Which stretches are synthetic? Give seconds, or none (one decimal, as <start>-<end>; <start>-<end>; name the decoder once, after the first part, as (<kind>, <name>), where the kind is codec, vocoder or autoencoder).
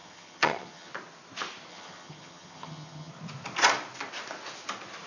0.0-0.9 (vocoder, HiFi-GAN); 1.7-3.1